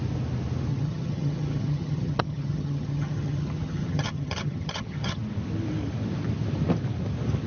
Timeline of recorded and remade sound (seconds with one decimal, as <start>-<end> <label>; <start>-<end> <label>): 0.0-0.7 recorded; 0.7-5.2 remade; 5.2-7.5 recorded